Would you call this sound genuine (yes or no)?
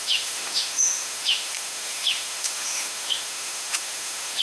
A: no